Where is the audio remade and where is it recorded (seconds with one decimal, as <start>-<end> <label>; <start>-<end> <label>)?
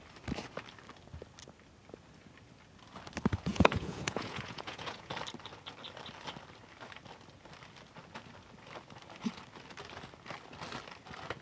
0.0-3.5 recorded; 3.5-5.1 remade; 5.1-11.4 recorded